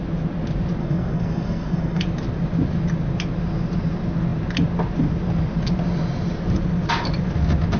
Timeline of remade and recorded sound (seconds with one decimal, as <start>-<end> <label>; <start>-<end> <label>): 0.0-0.8 recorded; 0.8-2.0 remade; 2.0-7.8 recorded